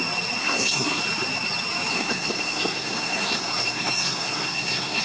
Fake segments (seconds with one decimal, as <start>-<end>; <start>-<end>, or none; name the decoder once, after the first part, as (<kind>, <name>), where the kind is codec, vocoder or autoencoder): 0.4-1.0 (codec, SNAC); 1.9-5.0